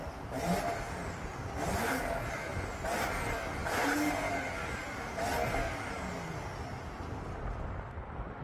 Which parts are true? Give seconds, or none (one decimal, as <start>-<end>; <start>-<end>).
0.0-8.4